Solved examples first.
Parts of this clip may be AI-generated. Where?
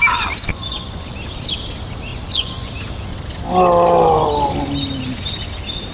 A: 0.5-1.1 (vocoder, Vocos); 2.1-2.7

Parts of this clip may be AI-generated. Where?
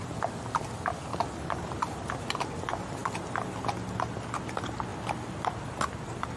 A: none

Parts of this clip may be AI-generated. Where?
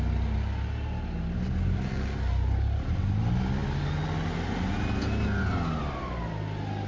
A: none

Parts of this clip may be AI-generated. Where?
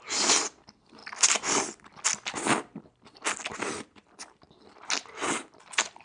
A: none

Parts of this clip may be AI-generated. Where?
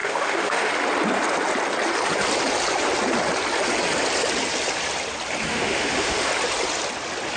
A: 0.0-0.7 (autoencoder, DAC-VAE); 5.5-6.3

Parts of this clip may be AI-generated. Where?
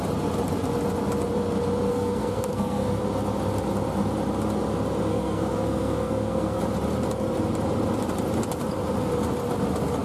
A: 1.9-3.0 (codec, SNAC); 5.1-6.6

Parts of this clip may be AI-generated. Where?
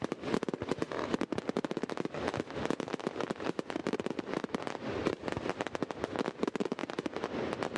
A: 6.8-7.8 (vocoder, BigVGAN v2)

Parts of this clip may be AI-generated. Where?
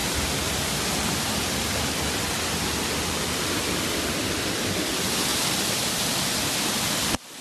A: 5.3-5.9 (vocoder, BigVGAN v2)